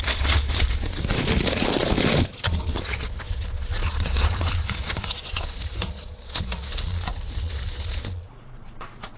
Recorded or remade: remade